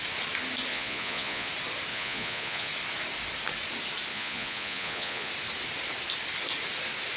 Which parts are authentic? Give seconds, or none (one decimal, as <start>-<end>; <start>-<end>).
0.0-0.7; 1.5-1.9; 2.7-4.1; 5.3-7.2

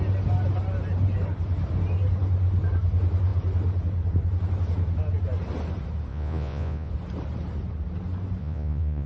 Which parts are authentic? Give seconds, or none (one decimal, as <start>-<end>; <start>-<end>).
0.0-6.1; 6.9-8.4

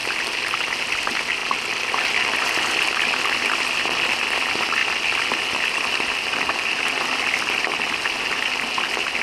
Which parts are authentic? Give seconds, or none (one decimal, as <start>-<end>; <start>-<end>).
0.0-9.2

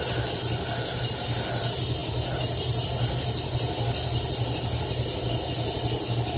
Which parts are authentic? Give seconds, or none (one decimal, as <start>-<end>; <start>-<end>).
0.0-6.4